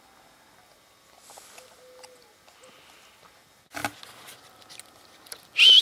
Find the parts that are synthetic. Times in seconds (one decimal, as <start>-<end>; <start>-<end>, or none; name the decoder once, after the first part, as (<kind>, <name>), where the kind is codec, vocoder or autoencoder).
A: none